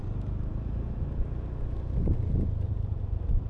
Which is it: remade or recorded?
recorded